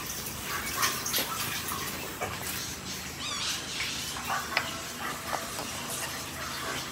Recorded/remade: recorded